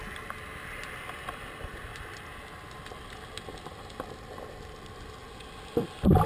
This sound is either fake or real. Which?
real